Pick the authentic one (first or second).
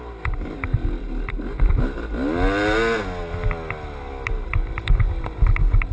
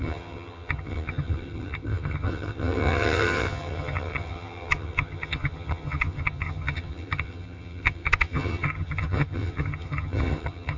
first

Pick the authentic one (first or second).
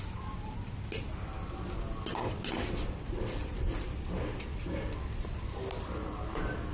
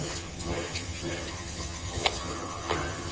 first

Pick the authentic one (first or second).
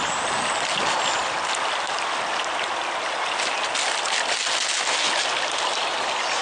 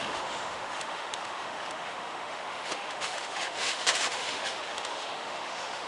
first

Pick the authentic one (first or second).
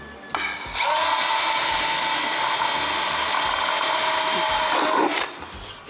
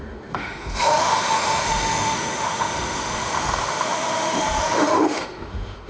first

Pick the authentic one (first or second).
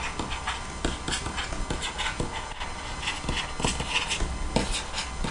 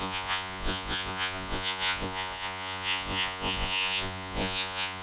first